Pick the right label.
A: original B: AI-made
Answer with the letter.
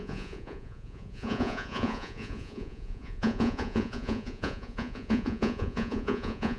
B